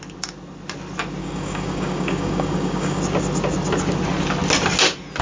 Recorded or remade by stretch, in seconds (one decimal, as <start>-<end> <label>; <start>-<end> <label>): 0.0-1.2 recorded; 1.2-3.0 remade; 3.0-5.2 recorded